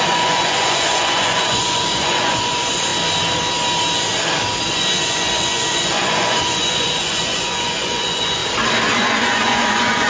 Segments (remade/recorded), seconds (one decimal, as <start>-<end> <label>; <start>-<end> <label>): 0.0-2.9 remade; 2.9-4.7 recorded; 4.7-8.4 remade; 8.4-9.0 recorded; 9.0-10.1 remade